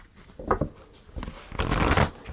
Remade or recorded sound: recorded